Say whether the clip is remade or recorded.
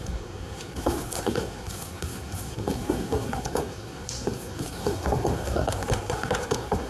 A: remade